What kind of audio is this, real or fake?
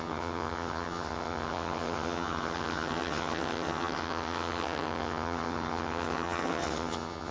fake